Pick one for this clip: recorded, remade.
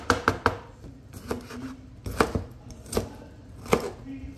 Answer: recorded